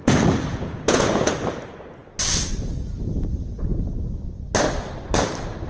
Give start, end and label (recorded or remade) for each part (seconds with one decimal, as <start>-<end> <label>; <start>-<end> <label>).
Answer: 0.0-0.5 recorded; 0.5-1.3 remade; 1.3-5.7 recorded